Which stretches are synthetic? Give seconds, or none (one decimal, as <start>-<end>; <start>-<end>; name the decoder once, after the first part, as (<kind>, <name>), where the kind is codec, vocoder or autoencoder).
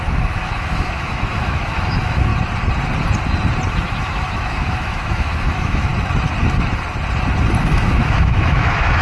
0.0-2.3 (autoencoder, DAC-VAE); 3.7-5.9; 7.6-9.0